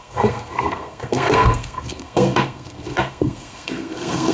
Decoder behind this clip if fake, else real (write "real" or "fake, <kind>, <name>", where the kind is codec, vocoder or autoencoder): fake, codec, SNAC